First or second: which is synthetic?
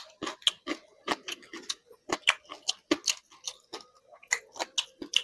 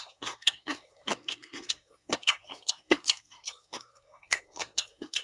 second